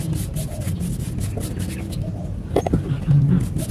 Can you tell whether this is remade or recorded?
recorded